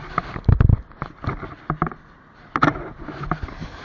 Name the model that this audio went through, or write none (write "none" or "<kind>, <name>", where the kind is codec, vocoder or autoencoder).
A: none